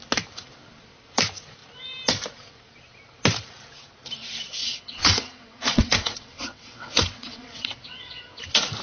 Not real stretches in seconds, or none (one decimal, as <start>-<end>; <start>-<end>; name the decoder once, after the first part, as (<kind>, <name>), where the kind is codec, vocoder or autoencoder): 4.6-8.4 (vocoder, WaveNeXt)